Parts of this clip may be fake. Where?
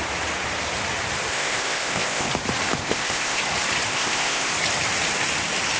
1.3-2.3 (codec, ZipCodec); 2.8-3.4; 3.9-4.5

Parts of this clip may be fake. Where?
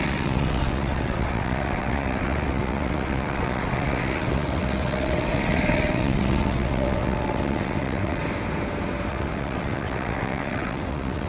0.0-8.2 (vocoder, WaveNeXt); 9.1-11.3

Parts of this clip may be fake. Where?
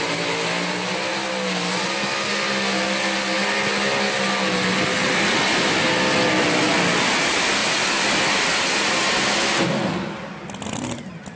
none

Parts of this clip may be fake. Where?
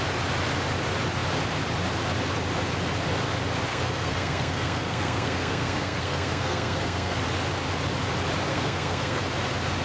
3.7-7.2 (codec, SNAC); 8.5-9.2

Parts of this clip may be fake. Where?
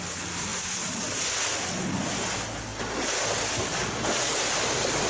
none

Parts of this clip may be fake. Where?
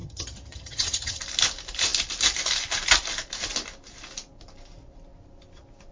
0.0-1.2 (vocoder, HiFi-GAN)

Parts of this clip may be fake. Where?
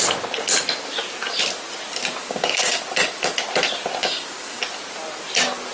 2.2-2.8 (codec, DAC); 4.0-4.6